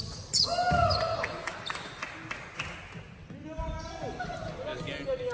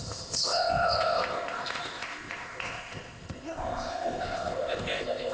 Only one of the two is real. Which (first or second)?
first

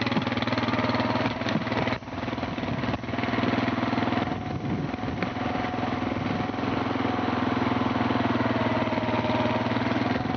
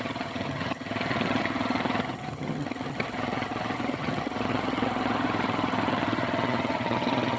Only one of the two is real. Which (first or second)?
first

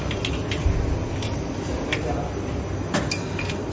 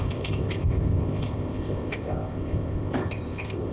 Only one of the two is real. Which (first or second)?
first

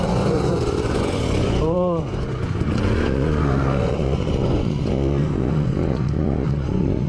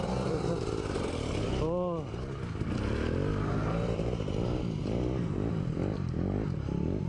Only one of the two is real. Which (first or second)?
second